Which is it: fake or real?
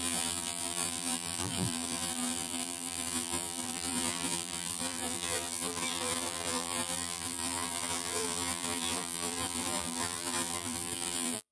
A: fake